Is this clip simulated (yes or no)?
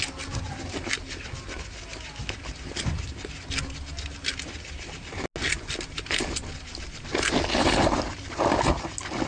no